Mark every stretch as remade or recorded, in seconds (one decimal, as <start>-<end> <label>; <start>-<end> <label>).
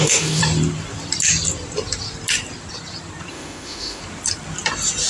0.0-0.4 remade; 0.4-3.3 recorded; 3.3-4.0 remade; 4.0-5.1 recorded